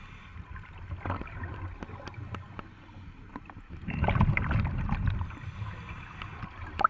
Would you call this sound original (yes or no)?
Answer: yes